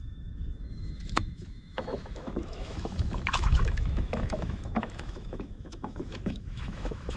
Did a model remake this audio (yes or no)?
yes